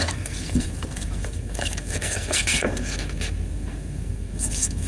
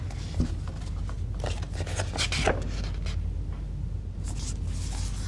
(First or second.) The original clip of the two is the second